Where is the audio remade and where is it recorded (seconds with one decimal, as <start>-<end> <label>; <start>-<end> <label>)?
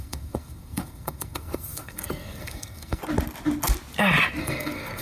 0.0-3.0 remade; 3.0-4.4 recorded; 4.4-5.0 remade